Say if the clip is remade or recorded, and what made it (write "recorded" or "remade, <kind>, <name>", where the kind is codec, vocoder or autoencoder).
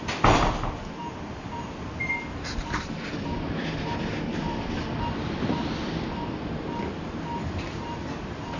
recorded